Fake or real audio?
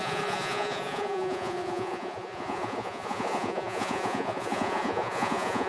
fake